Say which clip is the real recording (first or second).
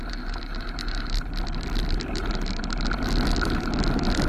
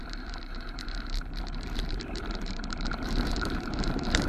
first